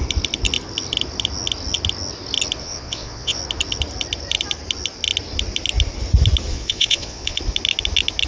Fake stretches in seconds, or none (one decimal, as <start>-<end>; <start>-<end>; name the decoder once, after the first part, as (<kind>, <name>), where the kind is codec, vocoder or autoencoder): 2.6-3.4 (vocoder, Vocos); 6.5-7.4